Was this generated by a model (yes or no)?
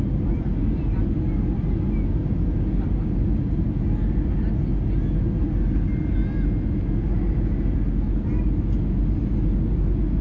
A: no